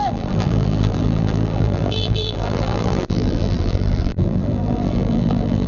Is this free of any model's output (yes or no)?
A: no